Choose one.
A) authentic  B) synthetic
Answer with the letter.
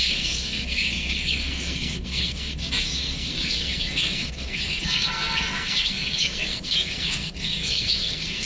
B